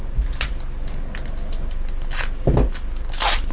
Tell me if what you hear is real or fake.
real